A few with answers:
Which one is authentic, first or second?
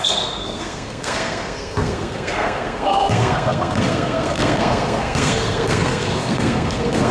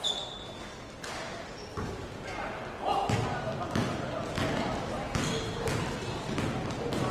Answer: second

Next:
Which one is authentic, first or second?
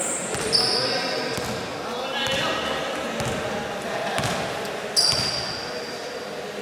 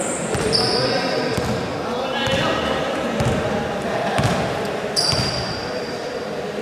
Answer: first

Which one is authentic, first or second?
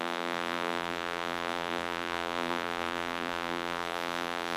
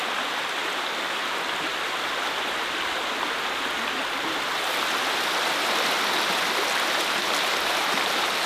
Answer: second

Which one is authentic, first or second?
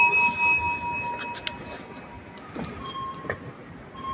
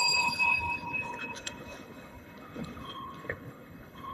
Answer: first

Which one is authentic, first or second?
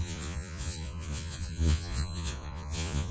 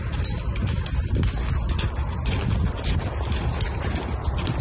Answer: second